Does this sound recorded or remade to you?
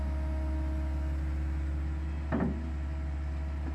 recorded